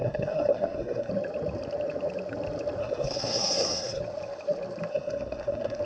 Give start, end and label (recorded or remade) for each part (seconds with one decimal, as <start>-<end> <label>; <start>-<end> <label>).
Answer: 0.0-1.1 remade; 1.1-2.8 recorded; 2.8-4.0 remade; 4.0-4.9 recorded; 4.9-5.8 remade